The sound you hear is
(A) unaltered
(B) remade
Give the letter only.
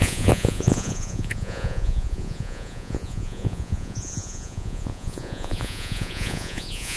B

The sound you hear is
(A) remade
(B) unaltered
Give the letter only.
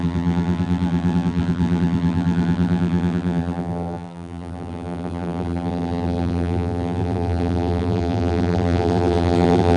A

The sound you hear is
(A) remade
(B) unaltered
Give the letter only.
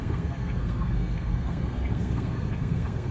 A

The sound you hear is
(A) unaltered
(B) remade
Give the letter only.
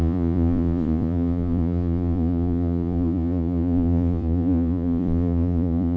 B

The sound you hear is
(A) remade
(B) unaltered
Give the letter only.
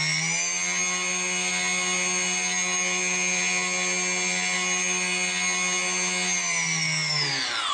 B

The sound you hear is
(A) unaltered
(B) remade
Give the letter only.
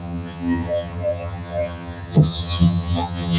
B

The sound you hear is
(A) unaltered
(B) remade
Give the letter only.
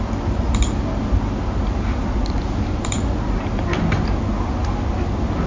A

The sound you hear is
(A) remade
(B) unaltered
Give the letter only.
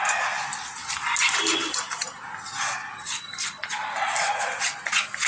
B